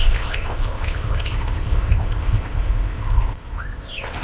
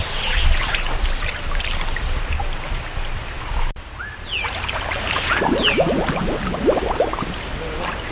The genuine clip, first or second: second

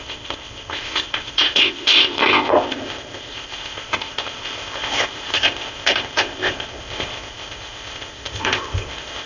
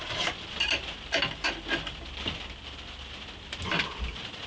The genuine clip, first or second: second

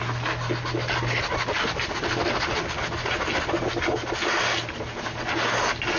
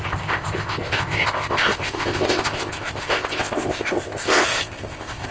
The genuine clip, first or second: first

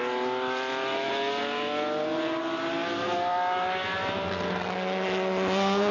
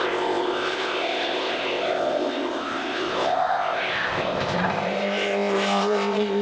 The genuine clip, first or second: first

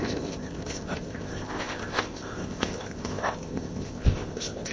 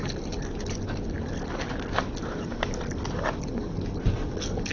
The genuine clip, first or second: second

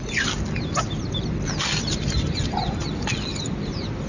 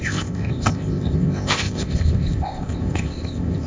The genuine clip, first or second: first